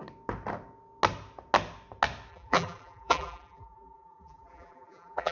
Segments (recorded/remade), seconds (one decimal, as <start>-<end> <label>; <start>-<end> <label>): 0.0-2.3 recorded; 2.3-5.3 remade